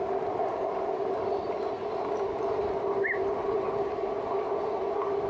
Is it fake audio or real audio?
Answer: real